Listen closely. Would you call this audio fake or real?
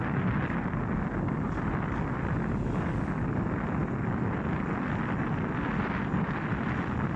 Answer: real